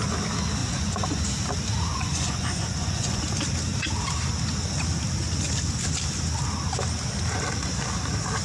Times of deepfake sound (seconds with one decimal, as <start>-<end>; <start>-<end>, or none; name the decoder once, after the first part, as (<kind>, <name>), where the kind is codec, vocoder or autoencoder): 0.6-1.2 (vocoder, Vocos); 1.9-3.2